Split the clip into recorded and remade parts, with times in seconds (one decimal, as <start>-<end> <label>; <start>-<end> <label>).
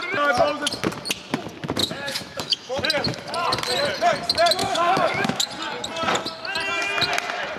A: 0.0-1.8 recorded; 1.8-2.7 remade; 2.7-4.6 recorded; 4.6-5.4 remade; 5.4-7.6 recorded